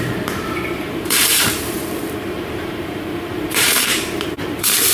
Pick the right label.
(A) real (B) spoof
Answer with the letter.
B